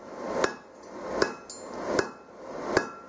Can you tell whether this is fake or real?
real